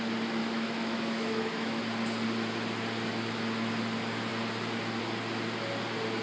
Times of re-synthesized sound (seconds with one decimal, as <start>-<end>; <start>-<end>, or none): 0.4-1.8